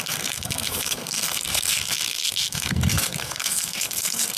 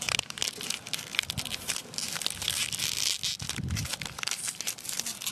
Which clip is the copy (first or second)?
first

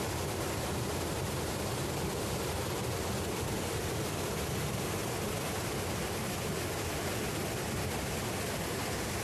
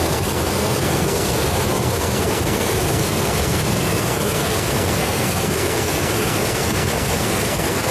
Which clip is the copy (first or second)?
second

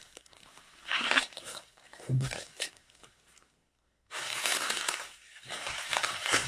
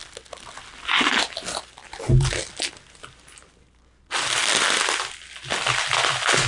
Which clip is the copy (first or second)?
first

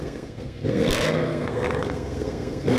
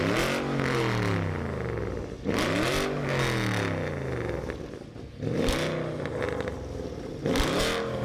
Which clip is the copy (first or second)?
first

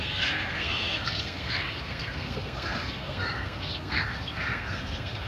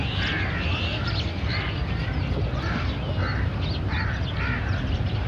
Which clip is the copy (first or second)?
first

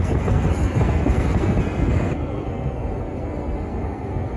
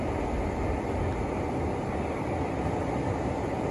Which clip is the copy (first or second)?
first